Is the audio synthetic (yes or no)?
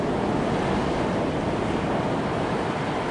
no